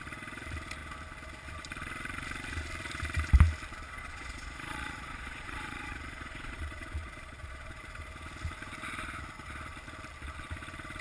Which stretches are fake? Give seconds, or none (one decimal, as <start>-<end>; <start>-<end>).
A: 4.0-7.8